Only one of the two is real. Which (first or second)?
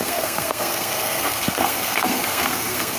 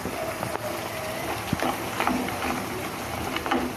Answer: second